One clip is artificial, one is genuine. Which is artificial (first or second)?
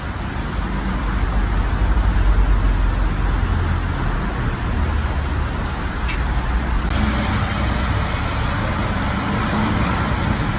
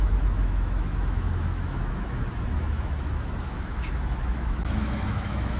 second